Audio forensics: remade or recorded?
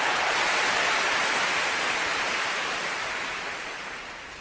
recorded